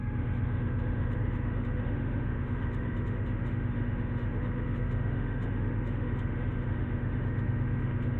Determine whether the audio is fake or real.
fake